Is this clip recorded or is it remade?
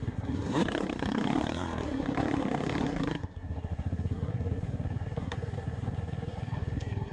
remade